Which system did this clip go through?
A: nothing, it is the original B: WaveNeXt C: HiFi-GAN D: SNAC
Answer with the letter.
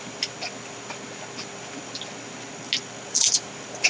A